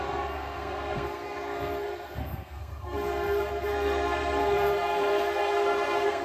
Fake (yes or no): yes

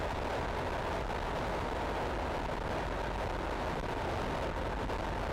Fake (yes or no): no